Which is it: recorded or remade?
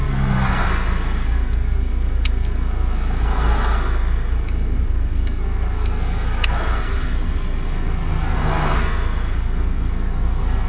remade